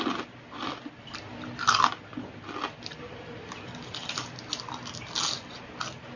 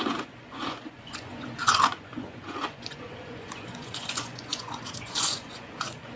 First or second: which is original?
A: first